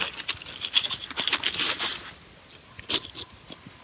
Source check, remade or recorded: recorded